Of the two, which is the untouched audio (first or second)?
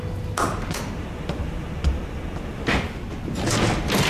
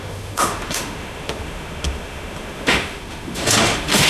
first